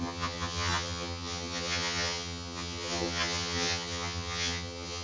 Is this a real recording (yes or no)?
no